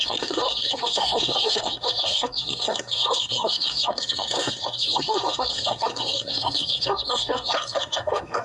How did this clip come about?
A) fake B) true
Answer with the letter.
A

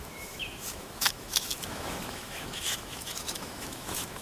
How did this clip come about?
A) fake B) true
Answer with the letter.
A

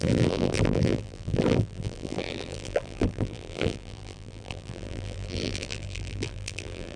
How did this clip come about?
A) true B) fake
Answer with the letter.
B